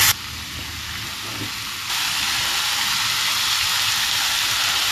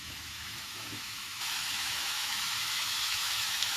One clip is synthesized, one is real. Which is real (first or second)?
first